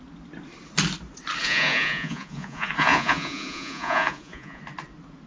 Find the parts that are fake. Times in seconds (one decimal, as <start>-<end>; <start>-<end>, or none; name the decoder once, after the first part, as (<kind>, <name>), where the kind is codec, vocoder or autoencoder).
1.4-4.6 (vocoder, Vocos)